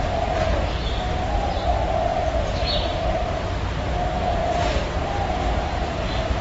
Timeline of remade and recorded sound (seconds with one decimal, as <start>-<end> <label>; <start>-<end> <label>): 0.0-2.1 recorded; 2.1-3.9 remade; 3.9-4.4 recorded; 4.4-4.9 remade; 4.9-6.4 recorded